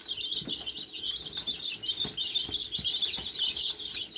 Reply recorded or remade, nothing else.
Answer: recorded